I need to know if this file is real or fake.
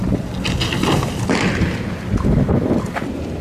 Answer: real